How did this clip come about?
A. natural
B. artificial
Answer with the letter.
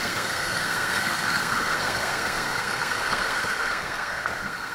B